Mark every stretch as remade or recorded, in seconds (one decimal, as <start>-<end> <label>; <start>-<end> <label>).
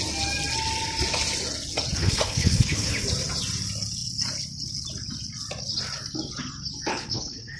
0.0-2.0 recorded; 2.0-2.9 remade; 2.9-6.9 recorded; 6.9-7.6 remade